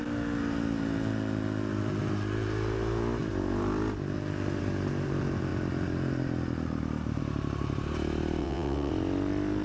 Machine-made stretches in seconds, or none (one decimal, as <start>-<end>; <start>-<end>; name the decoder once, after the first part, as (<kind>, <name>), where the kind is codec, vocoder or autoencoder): 8.4-8.9 (vocoder, WaveNeXt)